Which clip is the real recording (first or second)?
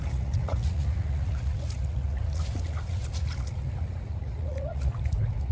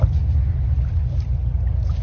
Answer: second